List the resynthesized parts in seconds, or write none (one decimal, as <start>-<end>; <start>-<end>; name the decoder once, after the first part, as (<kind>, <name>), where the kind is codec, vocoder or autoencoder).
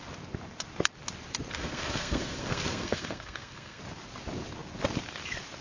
1.5-3.8 (codec, SNAC)